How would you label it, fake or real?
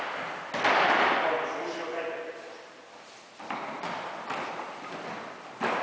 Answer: real